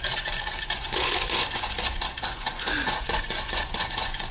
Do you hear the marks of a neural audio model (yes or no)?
yes